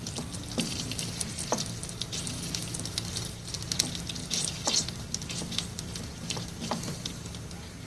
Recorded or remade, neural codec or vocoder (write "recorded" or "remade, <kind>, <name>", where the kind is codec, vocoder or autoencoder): recorded